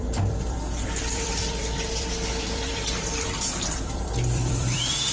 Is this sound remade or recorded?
remade